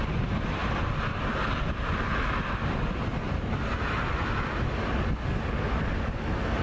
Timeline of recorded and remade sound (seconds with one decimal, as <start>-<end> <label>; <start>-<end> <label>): 0.0-6.6 recorded